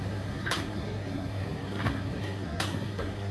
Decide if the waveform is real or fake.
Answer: fake